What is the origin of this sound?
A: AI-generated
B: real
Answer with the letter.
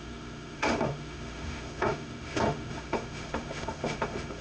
A